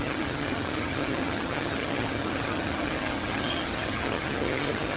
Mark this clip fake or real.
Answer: fake